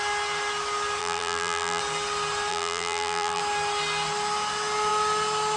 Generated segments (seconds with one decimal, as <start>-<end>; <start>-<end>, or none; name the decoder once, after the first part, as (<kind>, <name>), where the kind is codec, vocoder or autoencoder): 1.0-1.8 (vocoder, BigVGAN v2); 2.5-3.4

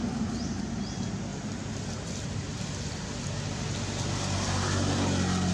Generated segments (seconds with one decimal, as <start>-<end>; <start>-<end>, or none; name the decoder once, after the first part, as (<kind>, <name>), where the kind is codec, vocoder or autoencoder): none

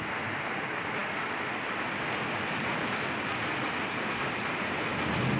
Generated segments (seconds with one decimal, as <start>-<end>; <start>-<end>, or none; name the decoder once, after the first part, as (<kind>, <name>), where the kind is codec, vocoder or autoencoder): none

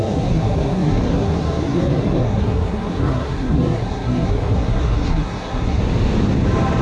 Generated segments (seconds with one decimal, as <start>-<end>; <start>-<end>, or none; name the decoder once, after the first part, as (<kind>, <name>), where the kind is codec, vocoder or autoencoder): 0.0-5.8 (codec, SNAC)

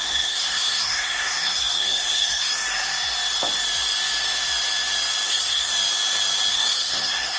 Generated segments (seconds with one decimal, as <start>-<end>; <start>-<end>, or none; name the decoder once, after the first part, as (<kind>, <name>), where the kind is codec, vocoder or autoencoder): 0.0-2.5 (codec, SNAC); 5.3-5.7; 6.5-7.4

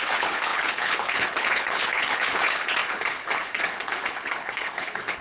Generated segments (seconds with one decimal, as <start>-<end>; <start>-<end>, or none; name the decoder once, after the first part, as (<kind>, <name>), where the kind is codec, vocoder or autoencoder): 0.0-5.2 (codec, HILCodec)

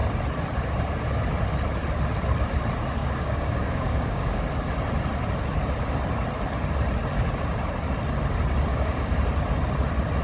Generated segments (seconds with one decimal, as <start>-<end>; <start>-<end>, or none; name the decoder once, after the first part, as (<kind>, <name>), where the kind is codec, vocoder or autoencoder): 3.0-4.4 (codec, DAC); 8.7-9.3

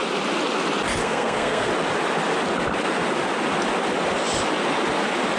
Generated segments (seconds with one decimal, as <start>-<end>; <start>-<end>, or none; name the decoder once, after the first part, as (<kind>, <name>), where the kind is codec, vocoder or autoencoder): 1.0-1.7 (codec, SNAC)